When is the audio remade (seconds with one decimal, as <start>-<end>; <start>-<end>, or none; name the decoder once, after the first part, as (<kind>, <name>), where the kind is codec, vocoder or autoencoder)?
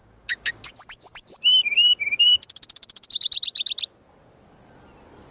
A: 0.0-0.7 (codec, DAC)